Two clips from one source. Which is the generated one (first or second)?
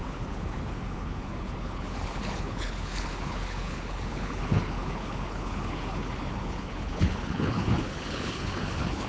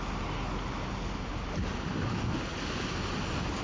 first